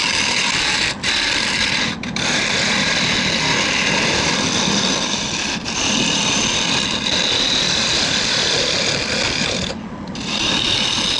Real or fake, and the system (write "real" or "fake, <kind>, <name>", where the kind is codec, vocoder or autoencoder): real